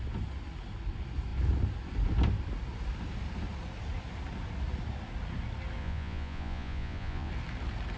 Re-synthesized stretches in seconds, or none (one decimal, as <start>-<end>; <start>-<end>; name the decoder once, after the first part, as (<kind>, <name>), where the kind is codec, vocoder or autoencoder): 5.8-7.3 (vocoder, Vocos)